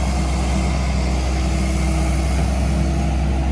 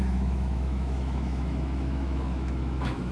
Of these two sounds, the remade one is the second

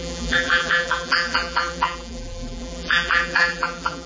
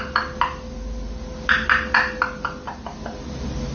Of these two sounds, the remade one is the first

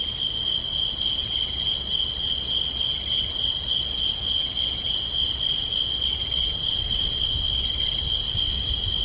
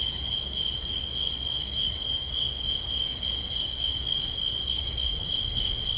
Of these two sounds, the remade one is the second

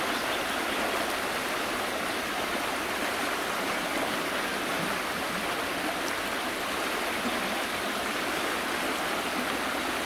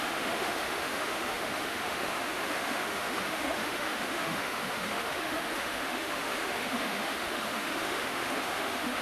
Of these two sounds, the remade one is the second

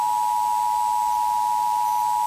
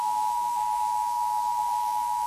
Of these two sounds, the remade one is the second